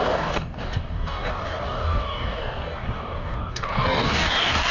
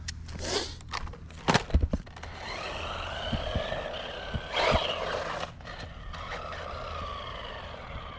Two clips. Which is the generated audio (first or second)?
first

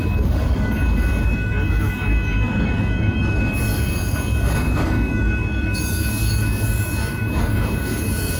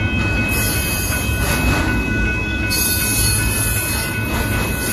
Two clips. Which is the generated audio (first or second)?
first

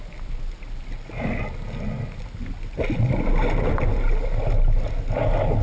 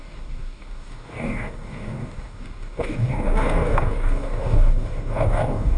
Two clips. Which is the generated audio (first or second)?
second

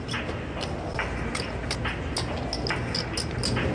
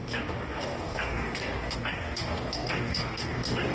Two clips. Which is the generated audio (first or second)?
second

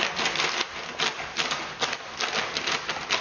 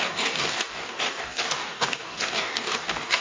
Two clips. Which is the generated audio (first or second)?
second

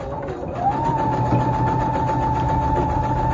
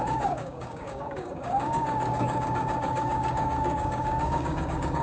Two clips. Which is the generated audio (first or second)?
second